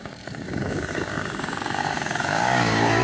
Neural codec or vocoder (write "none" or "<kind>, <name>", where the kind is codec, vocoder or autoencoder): codec, DAC